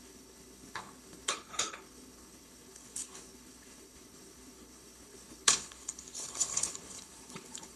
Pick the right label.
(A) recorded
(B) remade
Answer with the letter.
B